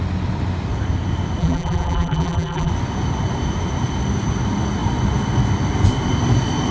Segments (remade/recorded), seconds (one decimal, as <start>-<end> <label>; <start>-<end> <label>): 0.0-1.4 recorded; 1.4-2.7 remade; 2.7-6.7 recorded